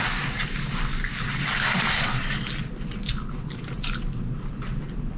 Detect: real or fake real